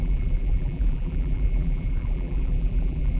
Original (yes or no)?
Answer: no